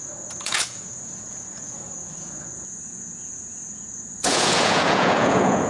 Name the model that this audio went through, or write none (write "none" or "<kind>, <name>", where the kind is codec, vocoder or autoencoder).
vocoder, Vocos